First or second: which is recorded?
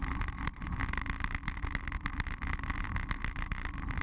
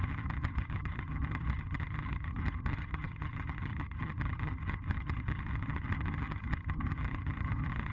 first